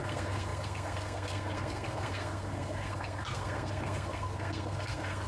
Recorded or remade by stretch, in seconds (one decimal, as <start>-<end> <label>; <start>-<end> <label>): 0.0-5.3 remade